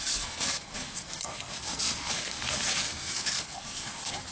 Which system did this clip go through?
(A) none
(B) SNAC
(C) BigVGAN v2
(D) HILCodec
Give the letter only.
B